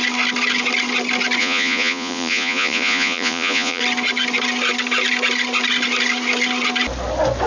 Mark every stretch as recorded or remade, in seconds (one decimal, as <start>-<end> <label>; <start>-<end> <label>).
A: 0.0-1.4 recorded; 1.4-3.8 remade; 3.8-7.5 recorded